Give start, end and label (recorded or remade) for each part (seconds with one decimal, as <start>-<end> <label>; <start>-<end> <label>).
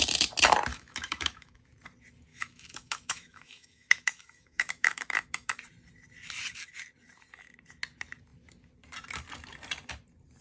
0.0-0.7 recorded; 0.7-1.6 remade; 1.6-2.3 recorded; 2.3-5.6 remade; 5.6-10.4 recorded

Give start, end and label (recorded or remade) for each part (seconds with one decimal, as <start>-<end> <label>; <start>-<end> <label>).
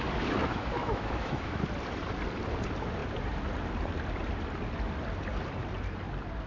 0.0-0.4 recorded; 0.4-1.6 remade; 1.6-6.5 recorded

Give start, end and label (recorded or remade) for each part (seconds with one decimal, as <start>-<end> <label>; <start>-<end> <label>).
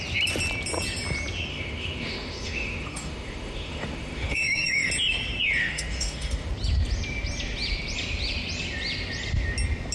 0.0-1.5 recorded; 1.5-4.9 remade; 4.9-5.6 recorded; 5.6-6.5 remade; 6.5-9.9 recorded